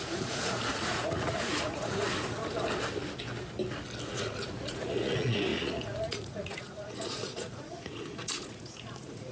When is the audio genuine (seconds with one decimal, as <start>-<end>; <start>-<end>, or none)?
2.4-4.1